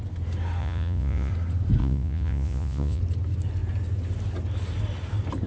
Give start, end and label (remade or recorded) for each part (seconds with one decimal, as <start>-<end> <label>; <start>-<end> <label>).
0.0-0.6 recorded; 0.6-1.3 remade; 1.3-1.8 recorded; 1.8-3.0 remade; 3.0-5.5 recorded